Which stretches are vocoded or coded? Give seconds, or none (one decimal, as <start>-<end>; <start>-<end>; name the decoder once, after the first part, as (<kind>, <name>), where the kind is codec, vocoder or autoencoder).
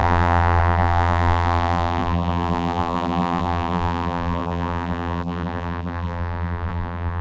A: 0.0-7.2 (vocoder, BigVGAN v2)